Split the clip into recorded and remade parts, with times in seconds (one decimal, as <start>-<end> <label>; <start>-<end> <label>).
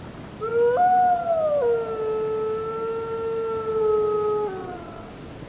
0.0-4.6 recorded; 4.6-5.1 remade; 5.1-5.5 recorded